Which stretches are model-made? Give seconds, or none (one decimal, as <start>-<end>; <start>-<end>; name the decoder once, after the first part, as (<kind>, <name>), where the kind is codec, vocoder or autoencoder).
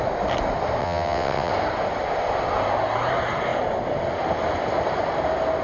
0.8-1.5 (vocoder, WaveNeXt)